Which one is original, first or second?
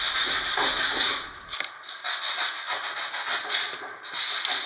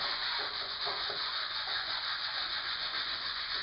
first